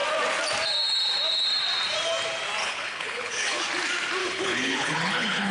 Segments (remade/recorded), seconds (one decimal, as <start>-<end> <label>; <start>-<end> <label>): 0.0-2.6 recorded; 2.6-3.6 remade; 3.6-4.2 recorded; 4.2-5.5 remade

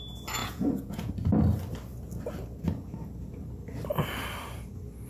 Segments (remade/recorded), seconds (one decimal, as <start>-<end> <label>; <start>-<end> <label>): 0.0-0.4 recorded; 0.4-1.1 remade; 1.1-5.1 recorded

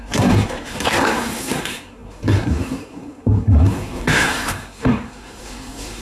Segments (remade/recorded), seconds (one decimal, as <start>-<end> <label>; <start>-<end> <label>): 0.0-6.0 remade

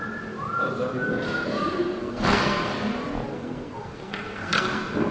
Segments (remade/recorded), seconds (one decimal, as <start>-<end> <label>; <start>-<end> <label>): 0.0-2.0 recorded; 2.0-2.7 remade; 2.7-3.3 recorded; 3.3-5.1 remade

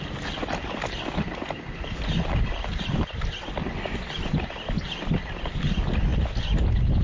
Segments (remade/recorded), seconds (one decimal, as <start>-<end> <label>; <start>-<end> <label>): 0.0-7.0 recorded